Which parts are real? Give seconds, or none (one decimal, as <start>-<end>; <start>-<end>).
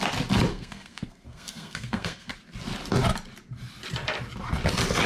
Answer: 0.0-0.5; 2.3-5.1